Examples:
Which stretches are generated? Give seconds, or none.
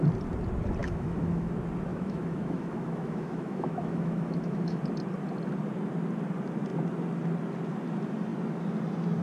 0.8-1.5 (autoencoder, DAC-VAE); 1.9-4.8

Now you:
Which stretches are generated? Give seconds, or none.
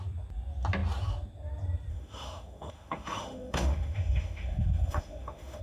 1.9-5.6 (autoencoder, DAC-VAE)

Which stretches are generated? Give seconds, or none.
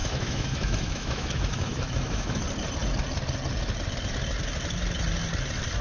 0.0-2.4 (autoencoder, DAC-VAE)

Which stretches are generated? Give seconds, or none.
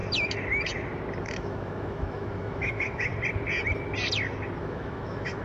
1.2-3.1 (autoencoder, DAC-VAE); 4.6-5.4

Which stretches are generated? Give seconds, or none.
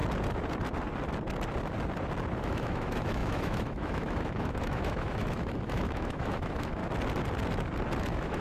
2.4-6.8 (autoencoder, DAC-VAE); 8.0-8.4